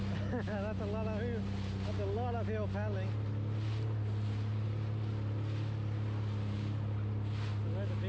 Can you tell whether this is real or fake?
real